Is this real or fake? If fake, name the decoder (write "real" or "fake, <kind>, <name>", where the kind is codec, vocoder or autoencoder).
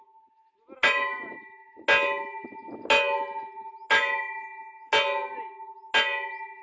real